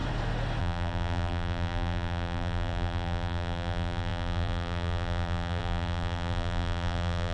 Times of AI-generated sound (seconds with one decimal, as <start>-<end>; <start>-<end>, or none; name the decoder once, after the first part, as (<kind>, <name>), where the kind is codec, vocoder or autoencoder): 0.6-7.3 (vocoder, BigVGAN v2)